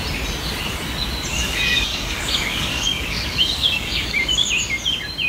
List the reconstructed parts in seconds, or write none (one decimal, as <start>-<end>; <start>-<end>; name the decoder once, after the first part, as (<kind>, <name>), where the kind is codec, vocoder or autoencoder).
1.3-4.5 (codec, DAC)